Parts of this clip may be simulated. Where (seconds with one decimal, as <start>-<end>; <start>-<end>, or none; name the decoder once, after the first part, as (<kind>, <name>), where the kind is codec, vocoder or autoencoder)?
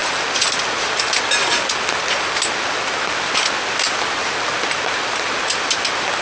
none